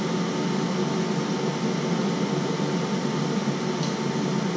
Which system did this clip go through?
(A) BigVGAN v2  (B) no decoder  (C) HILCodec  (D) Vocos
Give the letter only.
B